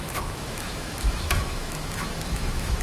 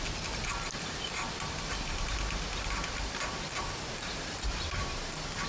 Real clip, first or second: second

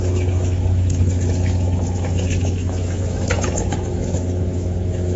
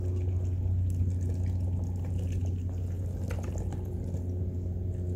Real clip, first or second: second